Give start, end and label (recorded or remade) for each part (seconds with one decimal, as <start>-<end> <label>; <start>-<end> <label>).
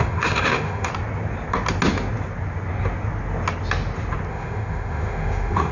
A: 0.0-0.9 remade; 0.9-4.3 recorded; 4.3-5.7 remade